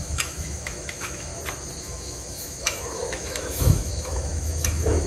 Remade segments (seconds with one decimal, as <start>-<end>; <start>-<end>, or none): 0.0-1.3; 1.8-5.1